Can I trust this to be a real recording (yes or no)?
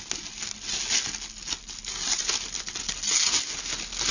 yes